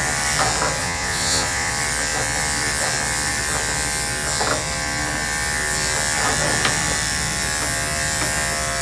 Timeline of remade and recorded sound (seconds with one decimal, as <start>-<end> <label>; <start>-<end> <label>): 0.0-0.8 recorded; 0.8-1.7 remade; 1.7-8.8 recorded